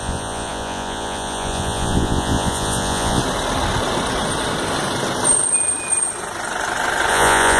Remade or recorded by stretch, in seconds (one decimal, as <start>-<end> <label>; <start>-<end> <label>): 0.0-3.2 remade; 3.2-7.1 recorded; 7.1-7.6 remade